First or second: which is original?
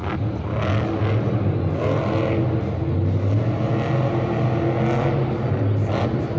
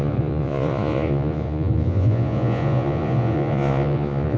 first